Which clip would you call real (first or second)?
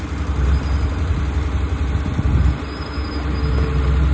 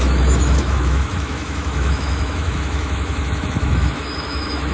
first